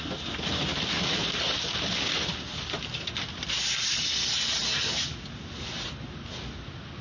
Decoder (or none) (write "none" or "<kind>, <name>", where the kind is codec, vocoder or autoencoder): none